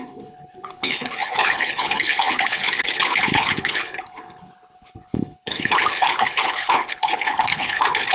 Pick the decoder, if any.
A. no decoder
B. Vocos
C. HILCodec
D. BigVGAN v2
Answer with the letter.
C